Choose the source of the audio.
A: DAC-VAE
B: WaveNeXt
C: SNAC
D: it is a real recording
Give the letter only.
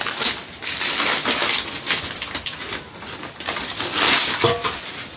D